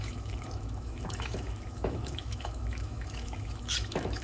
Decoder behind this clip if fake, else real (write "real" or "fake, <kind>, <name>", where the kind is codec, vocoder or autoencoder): fake, autoencoder, DAC-VAE